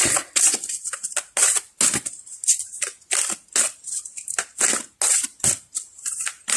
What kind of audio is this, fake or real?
real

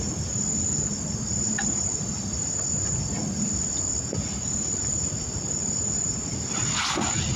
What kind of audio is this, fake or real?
real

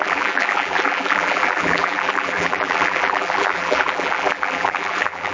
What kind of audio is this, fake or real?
fake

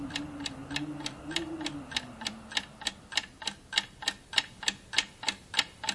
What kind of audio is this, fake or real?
real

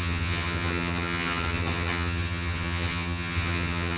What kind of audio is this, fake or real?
fake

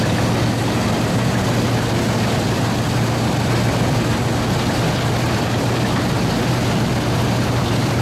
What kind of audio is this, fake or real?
real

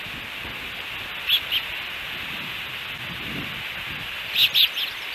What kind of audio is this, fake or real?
real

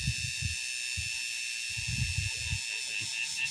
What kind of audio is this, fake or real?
real